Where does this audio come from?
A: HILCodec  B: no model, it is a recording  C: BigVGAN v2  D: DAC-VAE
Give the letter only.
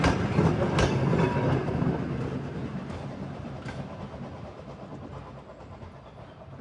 B